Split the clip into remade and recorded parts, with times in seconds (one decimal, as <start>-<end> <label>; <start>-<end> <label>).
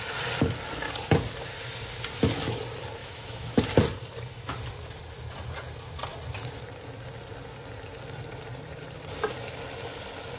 0.0-3.0 recorded; 3.0-3.6 remade; 3.6-10.4 recorded